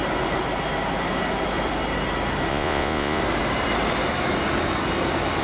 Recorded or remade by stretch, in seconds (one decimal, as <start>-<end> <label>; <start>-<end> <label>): 0.0-2.5 recorded; 2.5-3.2 remade; 3.2-5.4 recorded